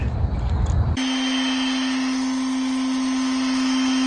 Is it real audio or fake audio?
real